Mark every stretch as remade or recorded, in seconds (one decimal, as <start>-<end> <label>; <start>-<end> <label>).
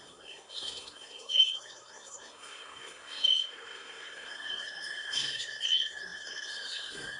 0.0-7.2 remade